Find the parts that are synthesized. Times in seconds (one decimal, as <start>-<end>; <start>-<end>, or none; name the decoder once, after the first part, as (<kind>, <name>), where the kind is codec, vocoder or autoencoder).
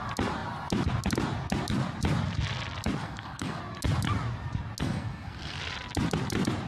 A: 3.0-3.6 (codec, SNAC); 4.8-5.6